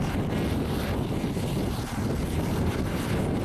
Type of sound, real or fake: real